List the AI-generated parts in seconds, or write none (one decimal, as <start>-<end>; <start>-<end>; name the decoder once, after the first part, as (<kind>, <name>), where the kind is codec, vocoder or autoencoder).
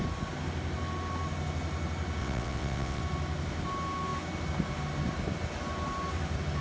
2.2-3.0 (vocoder, WaveNeXt)